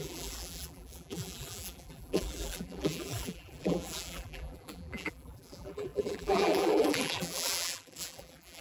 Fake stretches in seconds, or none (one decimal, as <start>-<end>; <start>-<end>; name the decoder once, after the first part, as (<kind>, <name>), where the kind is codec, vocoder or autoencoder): 0.0-8.6 (vocoder, BigVGAN v2)